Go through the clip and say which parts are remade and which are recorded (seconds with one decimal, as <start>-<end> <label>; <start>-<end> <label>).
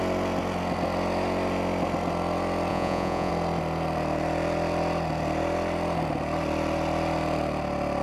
0.0-2.7 recorded; 2.7-3.3 remade; 3.3-8.0 recorded